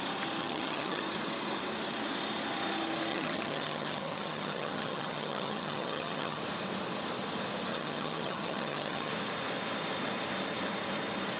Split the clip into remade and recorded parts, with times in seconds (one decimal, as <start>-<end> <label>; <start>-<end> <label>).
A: 0.0-0.4 recorded; 0.4-1.0 remade; 1.0-3.1 recorded; 3.1-6.4 remade; 6.4-7.7 recorded; 7.7-9.1 remade; 9.1-11.4 recorded